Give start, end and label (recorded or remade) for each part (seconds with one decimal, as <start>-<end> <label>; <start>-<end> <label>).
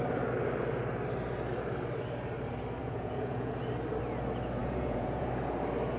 0.0-2.8 recorded; 2.8-3.5 remade; 3.5-4.6 recorded; 4.6-5.3 remade; 5.3-6.0 recorded